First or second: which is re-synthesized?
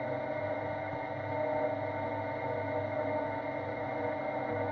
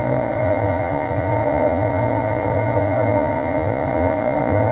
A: second